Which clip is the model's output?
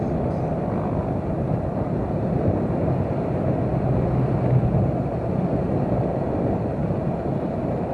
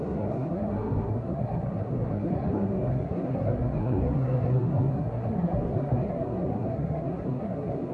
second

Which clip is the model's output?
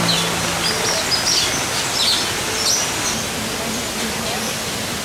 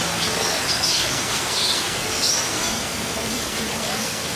second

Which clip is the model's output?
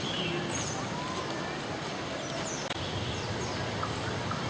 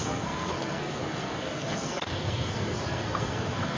second